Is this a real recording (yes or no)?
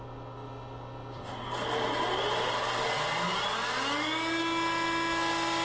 yes